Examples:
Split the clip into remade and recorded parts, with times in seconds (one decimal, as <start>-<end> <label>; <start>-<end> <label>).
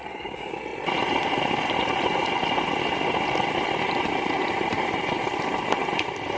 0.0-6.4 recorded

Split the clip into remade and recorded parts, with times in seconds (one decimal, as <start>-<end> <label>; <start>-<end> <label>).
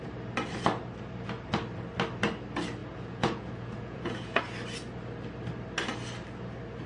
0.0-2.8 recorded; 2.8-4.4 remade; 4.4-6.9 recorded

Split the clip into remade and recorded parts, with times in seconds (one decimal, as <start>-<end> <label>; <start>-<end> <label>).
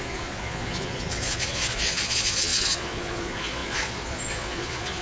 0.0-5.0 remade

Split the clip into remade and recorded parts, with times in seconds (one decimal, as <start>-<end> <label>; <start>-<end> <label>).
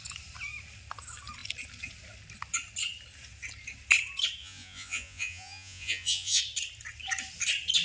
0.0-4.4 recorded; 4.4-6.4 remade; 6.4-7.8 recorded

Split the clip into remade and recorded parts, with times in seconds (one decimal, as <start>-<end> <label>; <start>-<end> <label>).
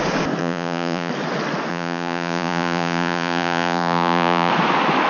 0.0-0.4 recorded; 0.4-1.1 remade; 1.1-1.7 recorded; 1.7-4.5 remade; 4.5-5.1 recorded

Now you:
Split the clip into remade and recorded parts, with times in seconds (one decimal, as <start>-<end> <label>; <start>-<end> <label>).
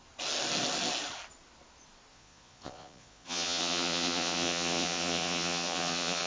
0.0-2.1 recorded; 2.1-6.3 remade